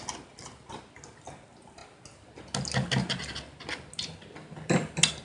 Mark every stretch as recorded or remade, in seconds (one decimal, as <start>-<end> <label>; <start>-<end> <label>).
0.0-5.2 recorded